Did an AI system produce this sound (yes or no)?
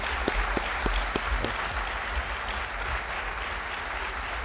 no